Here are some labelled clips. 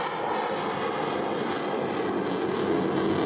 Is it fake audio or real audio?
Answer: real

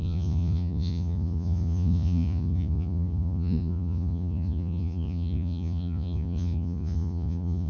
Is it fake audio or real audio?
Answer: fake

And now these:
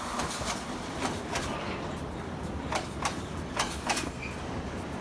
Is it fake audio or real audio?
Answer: real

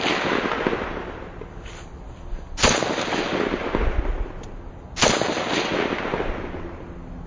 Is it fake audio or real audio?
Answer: real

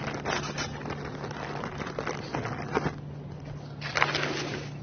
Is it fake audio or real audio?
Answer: real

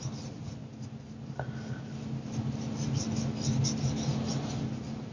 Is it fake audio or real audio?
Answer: real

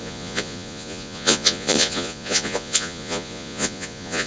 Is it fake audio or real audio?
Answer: fake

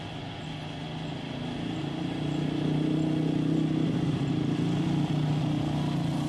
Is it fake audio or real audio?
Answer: real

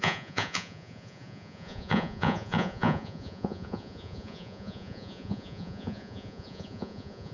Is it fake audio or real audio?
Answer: fake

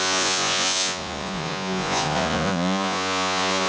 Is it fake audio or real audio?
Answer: fake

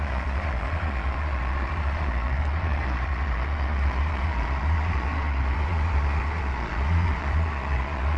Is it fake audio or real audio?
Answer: fake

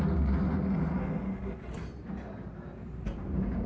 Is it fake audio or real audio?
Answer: real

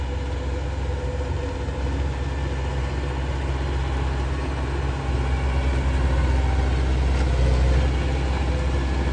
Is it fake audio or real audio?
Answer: real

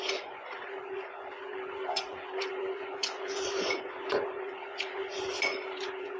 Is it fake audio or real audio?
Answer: fake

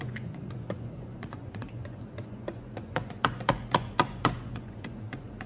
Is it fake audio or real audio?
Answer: fake